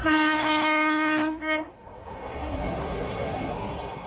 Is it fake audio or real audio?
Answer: fake